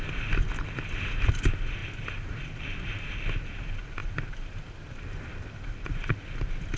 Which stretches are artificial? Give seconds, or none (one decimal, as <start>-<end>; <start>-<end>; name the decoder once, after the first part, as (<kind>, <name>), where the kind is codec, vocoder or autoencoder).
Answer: none